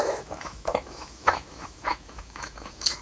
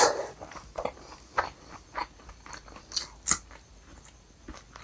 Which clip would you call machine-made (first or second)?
first